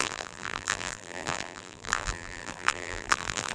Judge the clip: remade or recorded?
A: remade